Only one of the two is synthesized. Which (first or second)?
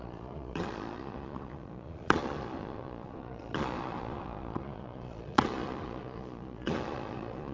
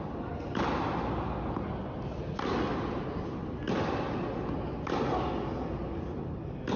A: first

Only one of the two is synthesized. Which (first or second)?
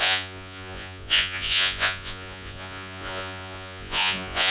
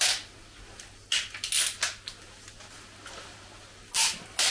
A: first